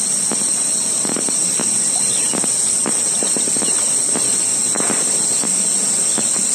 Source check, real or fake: real